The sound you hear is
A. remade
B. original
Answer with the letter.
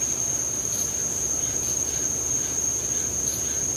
A